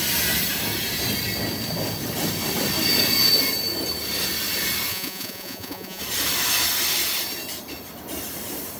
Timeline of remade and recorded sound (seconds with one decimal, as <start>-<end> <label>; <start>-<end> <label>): 0.0-4.9 recorded; 4.9-6.0 remade; 6.0-8.8 recorded